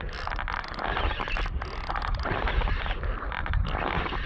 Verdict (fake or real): real